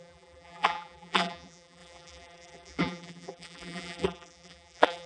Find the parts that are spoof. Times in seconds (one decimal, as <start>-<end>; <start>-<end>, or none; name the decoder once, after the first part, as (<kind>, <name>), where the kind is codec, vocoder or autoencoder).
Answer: 0.0-5.1 (vocoder, BigVGAN v2)